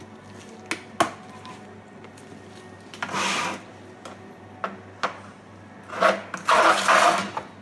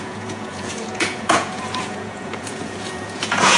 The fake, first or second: second